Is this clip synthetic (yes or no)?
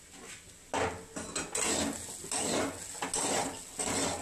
no